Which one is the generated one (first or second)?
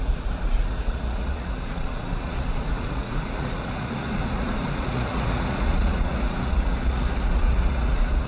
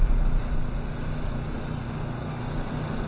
first